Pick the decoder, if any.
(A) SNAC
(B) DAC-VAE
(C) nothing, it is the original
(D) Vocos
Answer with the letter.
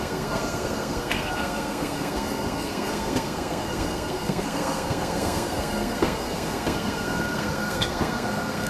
A